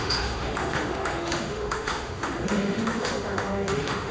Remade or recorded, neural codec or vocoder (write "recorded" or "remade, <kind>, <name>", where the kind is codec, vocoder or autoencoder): remade, autoencoder, DAC-VAE